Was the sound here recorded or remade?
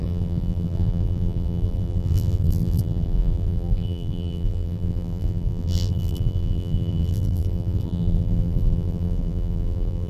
remade